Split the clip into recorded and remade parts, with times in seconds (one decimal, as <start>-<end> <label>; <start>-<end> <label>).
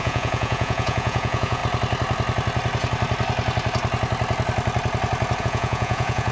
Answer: 0.0-1.6 remade; 1.6-5.4 recorded; 5.4-6.3 remade